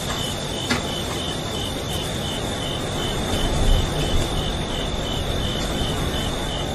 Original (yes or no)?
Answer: yes